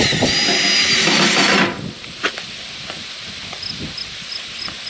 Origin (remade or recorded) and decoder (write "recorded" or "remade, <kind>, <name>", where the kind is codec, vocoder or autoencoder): recorded